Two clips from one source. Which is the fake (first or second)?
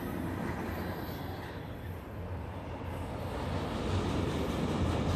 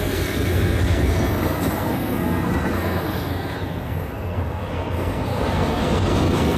second